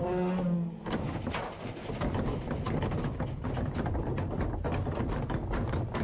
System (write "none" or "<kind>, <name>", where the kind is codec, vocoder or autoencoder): none